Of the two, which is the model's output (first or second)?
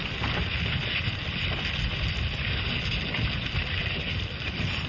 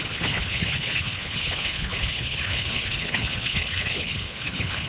second